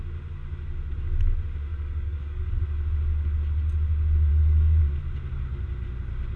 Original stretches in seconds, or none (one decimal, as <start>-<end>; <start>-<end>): 0.0-1.7; 2.5-4.3; 4.8-6.4